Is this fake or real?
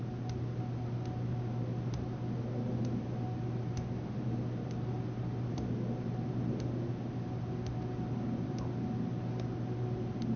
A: real